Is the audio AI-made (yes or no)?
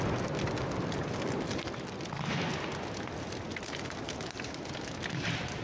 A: no